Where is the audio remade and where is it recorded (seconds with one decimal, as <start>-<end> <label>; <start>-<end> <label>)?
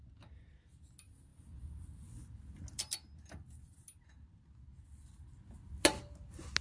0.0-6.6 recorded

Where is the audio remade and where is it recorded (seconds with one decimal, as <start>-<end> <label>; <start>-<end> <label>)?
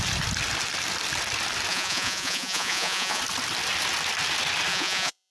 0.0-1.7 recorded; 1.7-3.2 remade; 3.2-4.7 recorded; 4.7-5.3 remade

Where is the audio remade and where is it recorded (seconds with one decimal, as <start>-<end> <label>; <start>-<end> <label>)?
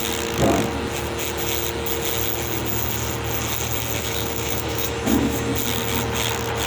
0.0-4.0 recorded; 4.0-5.5 remade; 5.5-6.7 recorded